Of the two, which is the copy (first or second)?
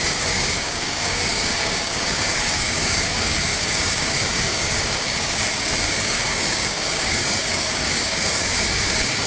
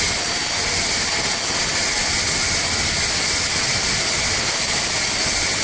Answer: first